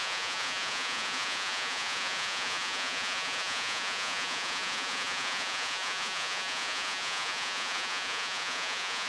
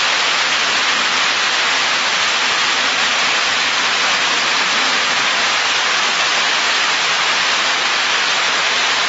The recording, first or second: second